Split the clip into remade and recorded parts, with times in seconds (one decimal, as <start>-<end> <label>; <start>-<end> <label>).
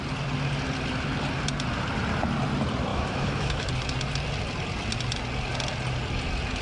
0.0-2.9 recorded; 2.9-3.7 remade; 3.7-6.6 recorded